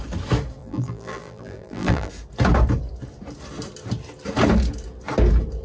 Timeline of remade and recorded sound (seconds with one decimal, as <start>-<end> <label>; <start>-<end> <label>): 0.0-0.6 recorded; 0.6-2.1 remade; 2.1-5.6 recorded